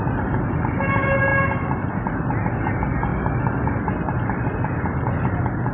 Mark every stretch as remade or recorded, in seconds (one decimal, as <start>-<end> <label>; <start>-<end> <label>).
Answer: 0.0-5.7 recorded